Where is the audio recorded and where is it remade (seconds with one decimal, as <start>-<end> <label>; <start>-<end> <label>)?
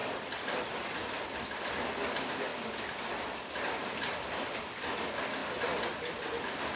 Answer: 0.0-5.4 recorded; 5.4-6.8 remade